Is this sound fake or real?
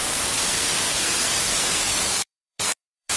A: fake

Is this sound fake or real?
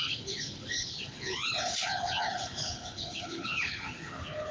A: fake